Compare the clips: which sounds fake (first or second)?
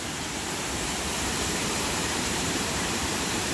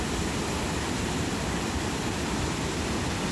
first